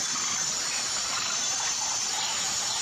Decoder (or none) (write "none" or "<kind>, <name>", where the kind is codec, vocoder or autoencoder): vocoder, BigVGAN v2